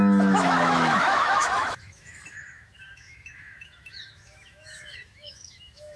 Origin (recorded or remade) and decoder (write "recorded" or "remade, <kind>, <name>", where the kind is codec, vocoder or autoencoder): remade, autoencoder, DAC-VAE